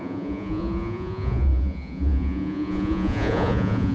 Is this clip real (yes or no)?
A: no